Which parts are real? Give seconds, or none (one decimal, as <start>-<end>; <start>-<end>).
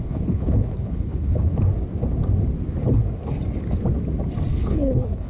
1.5-4.5